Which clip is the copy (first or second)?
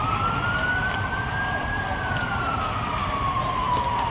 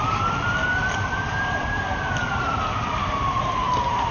second